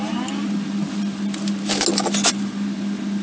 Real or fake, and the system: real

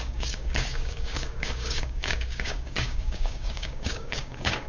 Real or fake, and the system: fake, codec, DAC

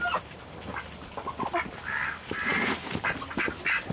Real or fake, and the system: real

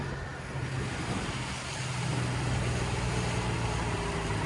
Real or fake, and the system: real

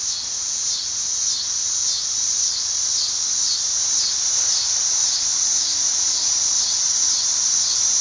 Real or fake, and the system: fake, vocoder, BigVGAN v2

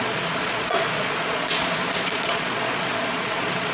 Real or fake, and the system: fake, vocoder, Vocos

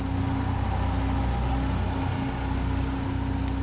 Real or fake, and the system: real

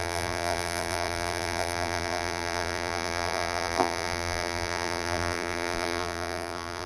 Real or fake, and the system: fake, vocoder, BigVGAN v2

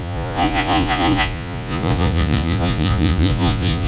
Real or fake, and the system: fake, vocoder, Vocos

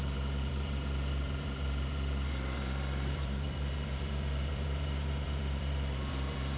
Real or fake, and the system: fake, vocoder, BigVGAN v2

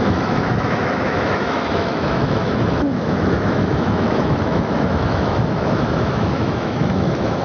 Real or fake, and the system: fake, autoencoder, DAC-VAE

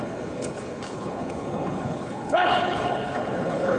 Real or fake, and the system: fake, codec, HILCodec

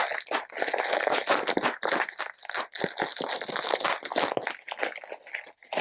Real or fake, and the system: real